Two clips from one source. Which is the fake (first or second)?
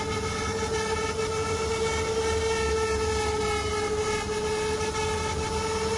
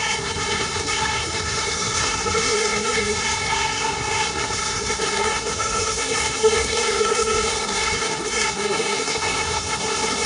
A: second